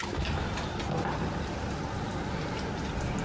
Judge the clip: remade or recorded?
recorded